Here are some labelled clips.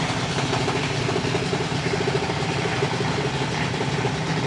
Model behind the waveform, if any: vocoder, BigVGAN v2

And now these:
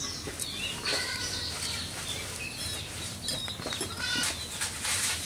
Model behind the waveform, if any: none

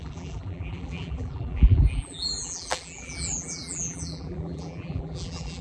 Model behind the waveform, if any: vocoder, BigVGAN v2